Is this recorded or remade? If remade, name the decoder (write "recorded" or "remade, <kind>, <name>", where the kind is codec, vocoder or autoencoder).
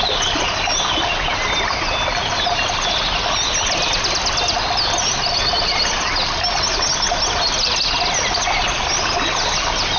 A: recorded